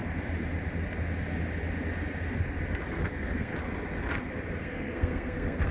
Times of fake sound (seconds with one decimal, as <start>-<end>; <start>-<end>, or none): 2.9-3.5; 4.6-5.7